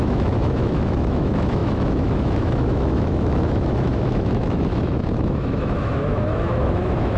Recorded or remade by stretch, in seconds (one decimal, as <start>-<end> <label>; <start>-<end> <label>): 0.0-7.2 remade